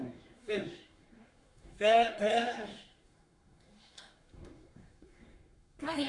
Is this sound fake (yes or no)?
yes